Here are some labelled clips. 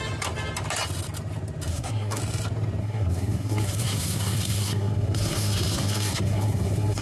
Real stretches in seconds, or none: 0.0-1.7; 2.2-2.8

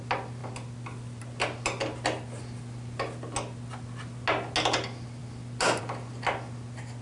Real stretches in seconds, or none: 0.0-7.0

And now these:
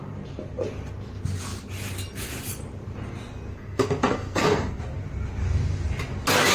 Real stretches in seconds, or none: 0.0-3.5; 4.8-6.5

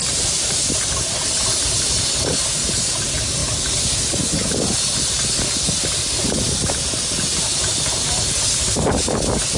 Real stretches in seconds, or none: 0.9-3.4; 4.1-9.6

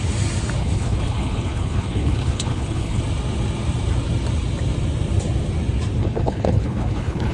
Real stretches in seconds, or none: 0.0-0.6; 3.0-6.0